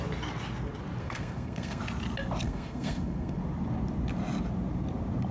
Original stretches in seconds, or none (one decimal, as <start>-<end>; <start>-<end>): 0.0-1.0; 1.8-2.4; 3.4-5.3